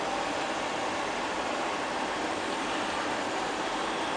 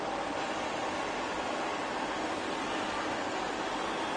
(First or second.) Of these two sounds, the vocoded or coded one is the first